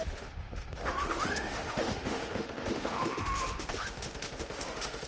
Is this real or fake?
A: fake